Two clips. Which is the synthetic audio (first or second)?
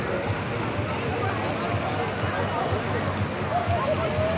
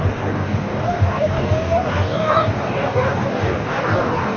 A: second